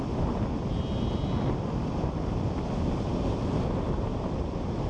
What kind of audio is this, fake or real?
real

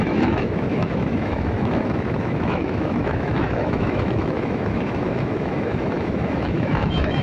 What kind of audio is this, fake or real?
fake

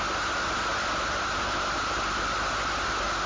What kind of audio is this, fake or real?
real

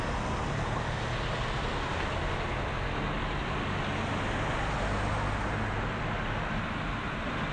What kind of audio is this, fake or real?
real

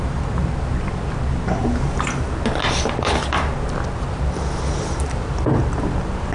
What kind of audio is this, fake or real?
real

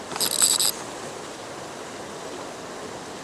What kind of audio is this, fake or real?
real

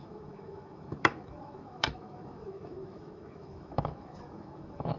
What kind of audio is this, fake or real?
fake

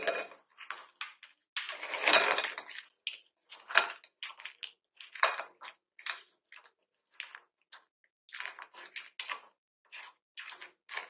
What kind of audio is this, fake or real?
real